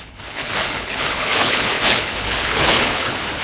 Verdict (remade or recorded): remade